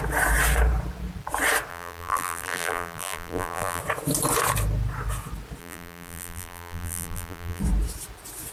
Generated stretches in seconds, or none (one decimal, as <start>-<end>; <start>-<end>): 1.7-3.8; 5.6-7.6